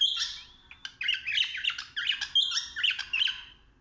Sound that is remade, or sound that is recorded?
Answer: recorded